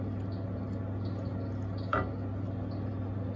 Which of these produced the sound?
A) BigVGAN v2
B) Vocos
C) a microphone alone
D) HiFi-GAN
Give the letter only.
C